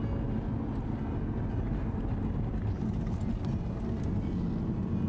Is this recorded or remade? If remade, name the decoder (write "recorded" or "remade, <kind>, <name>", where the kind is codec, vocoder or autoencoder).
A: recorded